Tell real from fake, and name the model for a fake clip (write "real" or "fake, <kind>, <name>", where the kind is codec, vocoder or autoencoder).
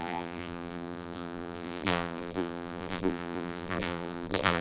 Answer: fake, vocoder, BigVGAN v2